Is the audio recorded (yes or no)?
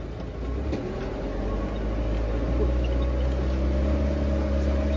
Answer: yes